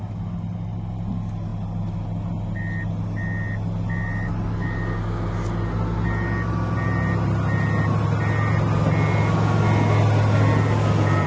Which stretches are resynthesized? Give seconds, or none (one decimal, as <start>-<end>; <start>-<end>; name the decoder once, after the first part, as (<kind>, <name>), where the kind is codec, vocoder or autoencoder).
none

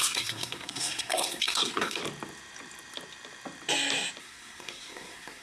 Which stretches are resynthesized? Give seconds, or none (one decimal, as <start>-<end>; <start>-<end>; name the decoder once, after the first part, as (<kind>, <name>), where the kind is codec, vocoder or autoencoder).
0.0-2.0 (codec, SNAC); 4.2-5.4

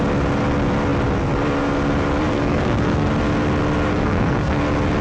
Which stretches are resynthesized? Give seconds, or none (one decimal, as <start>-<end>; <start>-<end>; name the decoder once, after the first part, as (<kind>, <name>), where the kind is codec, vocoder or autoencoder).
2.3-3.1 (codec, SNAC); 3.9-4.6

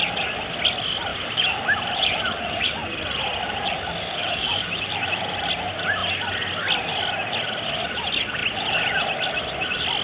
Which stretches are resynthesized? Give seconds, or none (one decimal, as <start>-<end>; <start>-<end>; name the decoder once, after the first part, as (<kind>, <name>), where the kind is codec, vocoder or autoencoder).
1.1-5.5 (vocoder, BigVGAN v2)

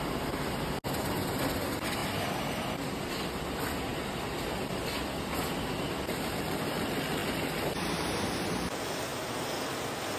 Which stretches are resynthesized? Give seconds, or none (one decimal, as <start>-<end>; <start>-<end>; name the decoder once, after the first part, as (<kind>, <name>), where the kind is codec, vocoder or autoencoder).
none